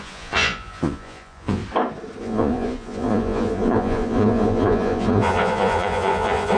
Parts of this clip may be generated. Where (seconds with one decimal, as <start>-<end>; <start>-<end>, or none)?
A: 0.0-1.6; 2.2-6.6